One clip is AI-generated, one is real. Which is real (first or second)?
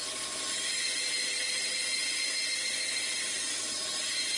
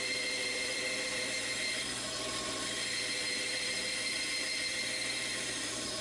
first